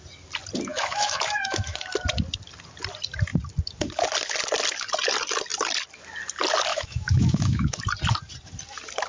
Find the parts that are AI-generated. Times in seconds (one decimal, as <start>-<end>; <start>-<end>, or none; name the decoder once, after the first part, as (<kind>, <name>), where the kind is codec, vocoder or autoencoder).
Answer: 0.7-1.8 (autoencoder, DAC-VAE); 6.7-7.8